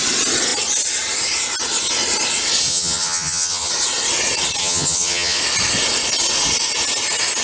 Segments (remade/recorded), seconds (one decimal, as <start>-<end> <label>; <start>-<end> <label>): 0.0-2.7 recorded; 2.7-3.7 remade; 3.7-4.6 recorded; 4.6-5.4 remade; 5.4-7.4 recorded